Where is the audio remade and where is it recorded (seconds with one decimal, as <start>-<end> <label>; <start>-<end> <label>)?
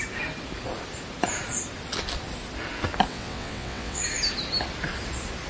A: 0.0-3.1 recorded; 3.1-4.0 remade; 4.0-5.5 recorded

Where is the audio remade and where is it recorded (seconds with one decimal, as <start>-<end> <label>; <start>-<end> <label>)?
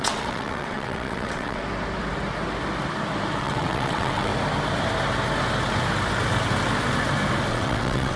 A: 0.0-1.6 remade; 1.6-3.4 recorded; 3.4-4.3 remade; 4.3-7.5 recorded; 7.5-8.2 remade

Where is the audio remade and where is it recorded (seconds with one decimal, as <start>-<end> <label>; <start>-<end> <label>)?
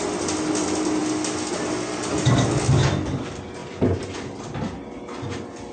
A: 0.0-5.7 recorded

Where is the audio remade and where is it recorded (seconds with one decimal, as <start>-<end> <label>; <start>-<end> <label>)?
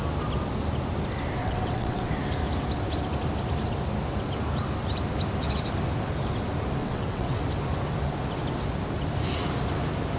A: 0.0-1.4 recorded; 1.4-2.1 remade; 2.1-6.8 recorded; 6.8-7.4 remade; 7.4-10.2 recorded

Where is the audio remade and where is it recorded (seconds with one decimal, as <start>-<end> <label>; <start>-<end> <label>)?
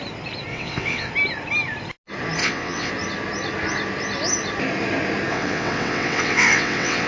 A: 0.0-0.5 recorded; 0.5-1.1 remade; 1.1-2.4 recorded; 2.4-2.9 remade; 2.9-5.3 recorded; 5.3-7.1 remade